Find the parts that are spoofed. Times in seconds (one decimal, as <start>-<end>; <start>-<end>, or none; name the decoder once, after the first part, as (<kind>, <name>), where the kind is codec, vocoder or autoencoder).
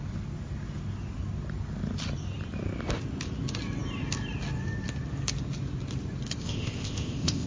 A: 6.4-7.5 (codec, ZipCodec)